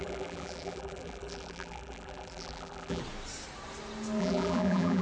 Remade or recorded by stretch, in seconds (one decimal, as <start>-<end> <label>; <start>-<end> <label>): 0.0-3.0 remade; 3.0-4.2 recorded; 4.2-5.0 remade